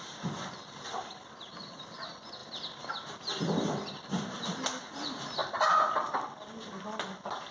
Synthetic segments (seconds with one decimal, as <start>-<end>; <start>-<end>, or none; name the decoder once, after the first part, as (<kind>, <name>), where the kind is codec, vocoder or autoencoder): none